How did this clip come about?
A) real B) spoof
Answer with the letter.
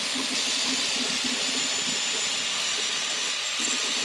A